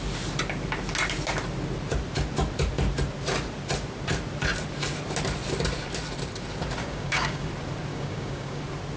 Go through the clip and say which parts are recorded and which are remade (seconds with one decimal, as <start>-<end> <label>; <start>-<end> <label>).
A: 0.0-6.8 recorded; 6.8-7.5 remade; 7.5-7.9 recorded; 7.9-8.6 remade; 8.6-9.0 recorded